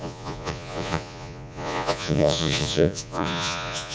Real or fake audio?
fake